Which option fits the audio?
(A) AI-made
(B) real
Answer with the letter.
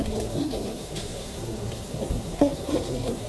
A